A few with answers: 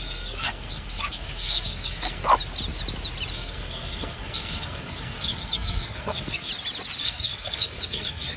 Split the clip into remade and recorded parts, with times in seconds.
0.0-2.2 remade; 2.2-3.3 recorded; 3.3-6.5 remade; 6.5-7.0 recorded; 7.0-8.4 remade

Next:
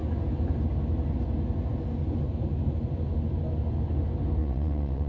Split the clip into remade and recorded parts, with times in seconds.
0.0-4.4 recorded; 4.4-5.1 remade

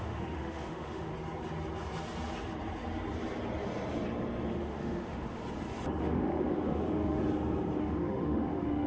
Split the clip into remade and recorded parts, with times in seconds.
0.0-1.1 remade; 1.1-4.5 recorded; 4.5-5.4 remade; 5.4-6.0 recorded; 6.0-7.2 remade; 7.2-7.8 recorded; 7.8-8.9 remade

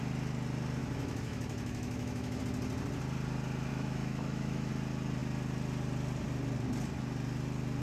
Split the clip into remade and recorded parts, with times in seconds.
0.0-0.8 recorded; 0.8-2.4 remade; 2.4-3.7 recorded; 3.7-4.7 remade; 4.7-7.8 recorded

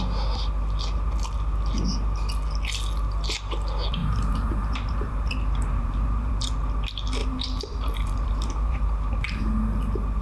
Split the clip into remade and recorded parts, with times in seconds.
0.0-4.0 recorded; 4.0-6.3 remade; 6.3-7.2 recorded; 7.2-9.4 remade; 9.4-10.2 recorded

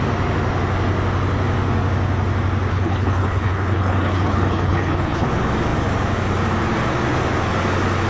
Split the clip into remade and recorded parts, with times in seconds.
0.0-2.7 recorded; 2.7-5.3 remade; 5.3-8.1 recorded

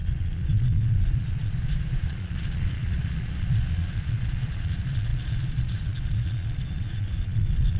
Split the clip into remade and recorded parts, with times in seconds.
0.0-7.8 remade